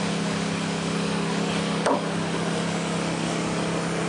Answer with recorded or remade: remade